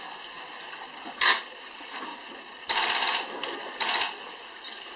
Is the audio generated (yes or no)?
no